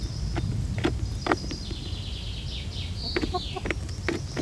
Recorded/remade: recorded